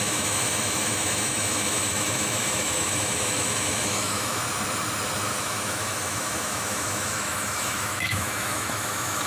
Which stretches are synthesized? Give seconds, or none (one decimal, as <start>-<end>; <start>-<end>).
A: 0.0-4.4; 5.4-9.3